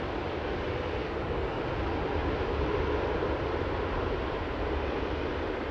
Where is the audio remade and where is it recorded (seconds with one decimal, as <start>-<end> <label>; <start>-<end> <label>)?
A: 0.0-1.0 recorded; 1.0-1.6 remade; 1.6-5.7 recorded